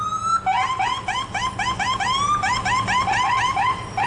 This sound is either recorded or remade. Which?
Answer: recorded